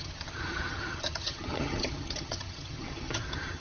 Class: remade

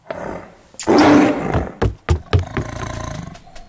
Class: recorded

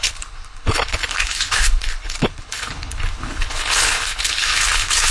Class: remade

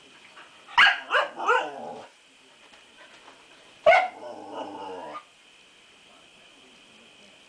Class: recorded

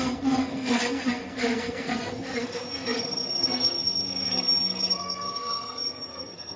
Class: remade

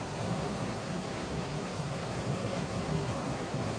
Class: remade